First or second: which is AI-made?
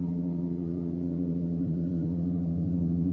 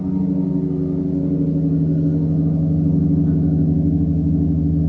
first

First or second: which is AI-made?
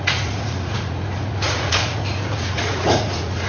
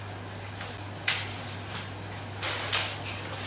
first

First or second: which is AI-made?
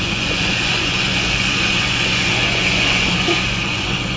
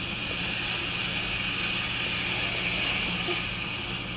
first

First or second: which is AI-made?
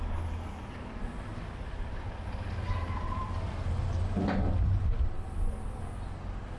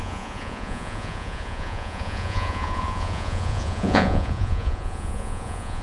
second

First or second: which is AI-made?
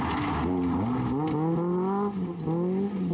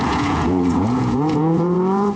second